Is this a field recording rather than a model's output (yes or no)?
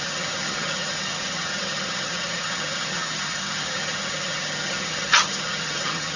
no